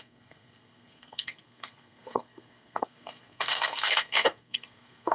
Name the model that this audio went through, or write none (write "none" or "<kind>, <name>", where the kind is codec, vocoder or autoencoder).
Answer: codec, SNAC